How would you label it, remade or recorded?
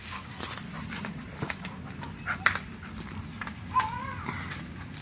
recorded